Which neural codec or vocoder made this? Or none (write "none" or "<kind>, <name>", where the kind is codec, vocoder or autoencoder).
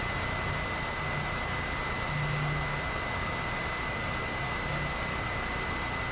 none